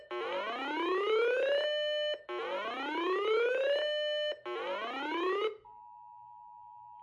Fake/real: real